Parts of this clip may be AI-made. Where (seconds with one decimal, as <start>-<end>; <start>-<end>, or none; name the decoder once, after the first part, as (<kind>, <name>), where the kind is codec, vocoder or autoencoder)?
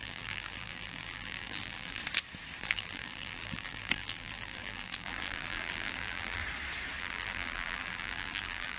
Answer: 0.0-2.0 (vocoder, BigVGAN v2); 2.6-6.4; 7.0-8.8